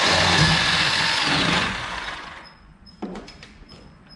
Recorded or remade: remade